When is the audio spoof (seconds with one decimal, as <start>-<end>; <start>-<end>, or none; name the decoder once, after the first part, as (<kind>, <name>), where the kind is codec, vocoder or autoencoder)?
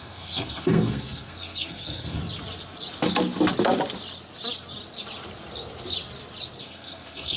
0.0-2.2 (codec, SNAC); 6.6-7.4